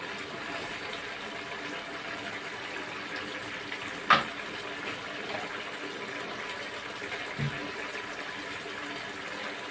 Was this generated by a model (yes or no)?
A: no